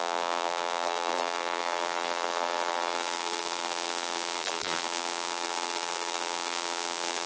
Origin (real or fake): fake